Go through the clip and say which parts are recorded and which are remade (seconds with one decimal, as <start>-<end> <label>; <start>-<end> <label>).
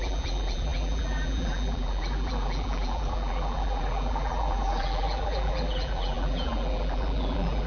0.0-7.7 remade